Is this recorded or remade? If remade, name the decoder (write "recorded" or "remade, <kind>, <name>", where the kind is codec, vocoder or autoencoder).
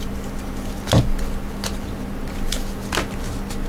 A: recorded